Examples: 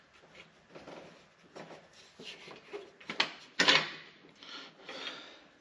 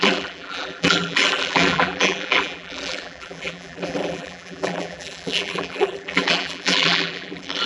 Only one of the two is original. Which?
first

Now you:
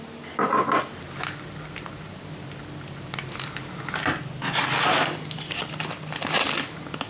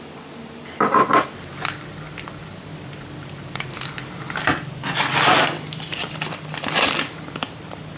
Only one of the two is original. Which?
first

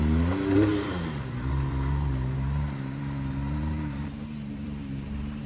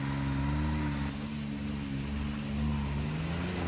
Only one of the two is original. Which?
second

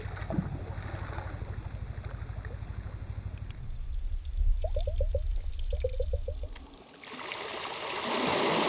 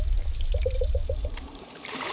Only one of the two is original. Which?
first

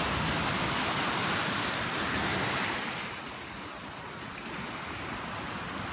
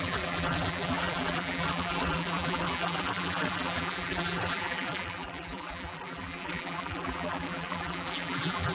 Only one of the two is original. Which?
first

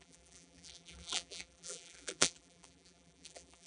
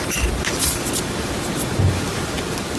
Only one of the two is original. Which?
second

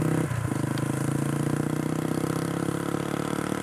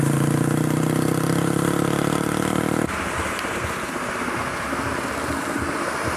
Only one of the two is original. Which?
first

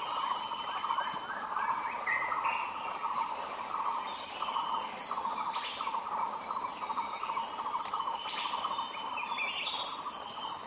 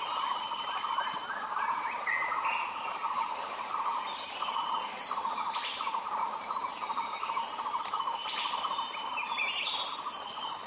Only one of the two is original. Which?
first